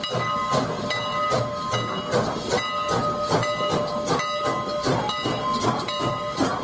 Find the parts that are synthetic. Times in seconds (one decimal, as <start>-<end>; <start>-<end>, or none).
none